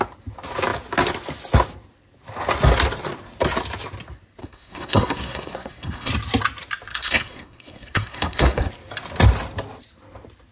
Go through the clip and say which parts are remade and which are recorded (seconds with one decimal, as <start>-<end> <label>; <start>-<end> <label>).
0.0-4.4 recorded; 4.4-6.1 remade; 6.1-6.9 recorded; 6.9-8.7 remade; 8.7-10.5 recorded